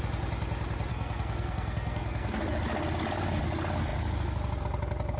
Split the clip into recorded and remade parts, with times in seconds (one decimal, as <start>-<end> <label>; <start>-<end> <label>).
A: 0.0-0.9 recorded; 0.9-2.4 remade; 2.4-5.2 recorded